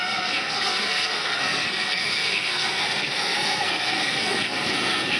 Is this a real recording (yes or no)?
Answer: no